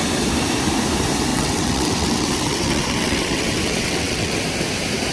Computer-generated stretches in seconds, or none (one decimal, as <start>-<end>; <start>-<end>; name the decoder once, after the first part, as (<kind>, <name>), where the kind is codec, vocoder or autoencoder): 1.3-4.4 (vocoder, WaveNeXt)